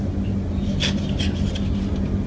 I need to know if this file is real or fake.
real